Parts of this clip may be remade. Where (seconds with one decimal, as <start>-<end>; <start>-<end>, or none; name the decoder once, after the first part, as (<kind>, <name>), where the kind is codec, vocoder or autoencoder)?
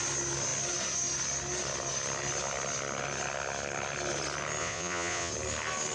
4.6-5.3 (vocoder, Vocos)